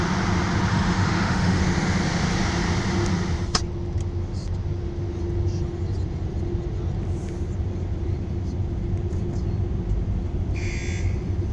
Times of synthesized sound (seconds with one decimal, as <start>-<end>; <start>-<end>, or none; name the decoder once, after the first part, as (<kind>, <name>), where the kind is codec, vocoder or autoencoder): 0.7-1.6 (autoencoder, DAC-VAE)